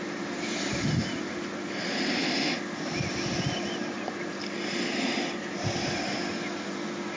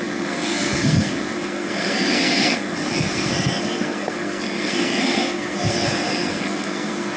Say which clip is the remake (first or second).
second